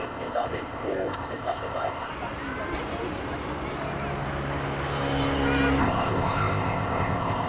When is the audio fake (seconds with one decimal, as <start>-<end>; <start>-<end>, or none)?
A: 0.0-2.1; 5.8-7.5